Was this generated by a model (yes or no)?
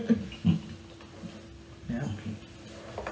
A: no